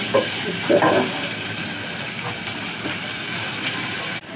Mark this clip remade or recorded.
recorded